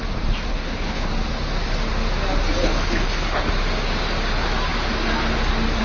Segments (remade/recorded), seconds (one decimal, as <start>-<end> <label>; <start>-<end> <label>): 0.0-0.5 recorded; 0.5-1.1 remade; 1.1-2.6 recorded; 2.6-3.5 remade; 3.5-5.8 recorded